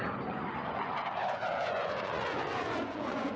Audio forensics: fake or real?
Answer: fake